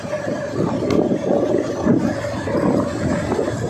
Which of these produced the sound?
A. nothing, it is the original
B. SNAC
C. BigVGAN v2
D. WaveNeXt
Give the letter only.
A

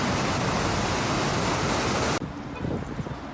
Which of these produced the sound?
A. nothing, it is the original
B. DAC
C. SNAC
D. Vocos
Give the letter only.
A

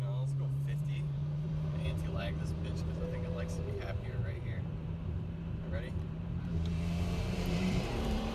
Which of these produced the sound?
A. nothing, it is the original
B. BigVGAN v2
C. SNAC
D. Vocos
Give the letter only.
B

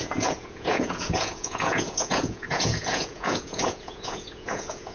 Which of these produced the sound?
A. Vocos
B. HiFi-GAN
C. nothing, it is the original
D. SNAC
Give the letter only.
A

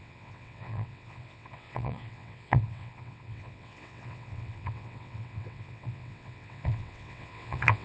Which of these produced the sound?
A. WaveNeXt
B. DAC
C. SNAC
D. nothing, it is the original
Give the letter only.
A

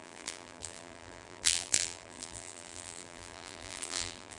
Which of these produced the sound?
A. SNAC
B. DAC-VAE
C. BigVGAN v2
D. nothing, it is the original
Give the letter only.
C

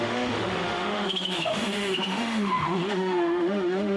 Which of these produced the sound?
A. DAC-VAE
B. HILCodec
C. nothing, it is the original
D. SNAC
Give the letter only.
A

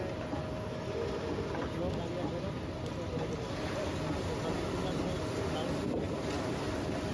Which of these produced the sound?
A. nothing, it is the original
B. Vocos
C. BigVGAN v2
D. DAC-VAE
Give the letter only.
A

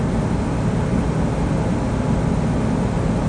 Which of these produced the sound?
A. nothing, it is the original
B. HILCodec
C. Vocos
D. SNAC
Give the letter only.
A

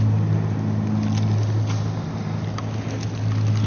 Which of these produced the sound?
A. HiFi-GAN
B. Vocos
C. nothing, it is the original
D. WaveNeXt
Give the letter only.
C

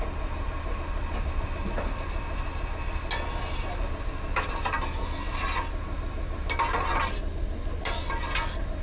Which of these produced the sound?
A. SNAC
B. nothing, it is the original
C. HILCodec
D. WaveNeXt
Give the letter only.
B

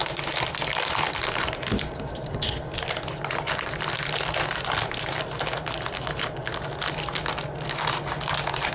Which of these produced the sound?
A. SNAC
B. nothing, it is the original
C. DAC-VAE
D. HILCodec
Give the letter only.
B